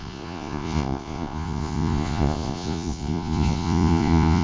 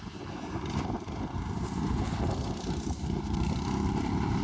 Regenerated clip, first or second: first